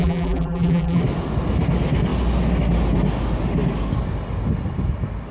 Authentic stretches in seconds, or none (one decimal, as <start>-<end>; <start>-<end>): 1.0-5.3